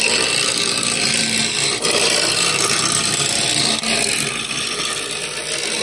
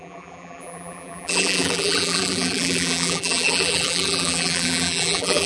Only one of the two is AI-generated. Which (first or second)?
second